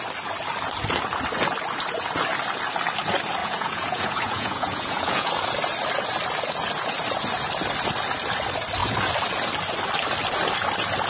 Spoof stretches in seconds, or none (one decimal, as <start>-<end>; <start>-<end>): 3.4-5.3